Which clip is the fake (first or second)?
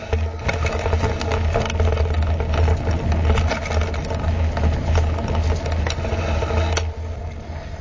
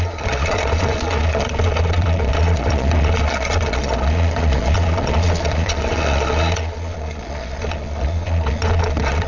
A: second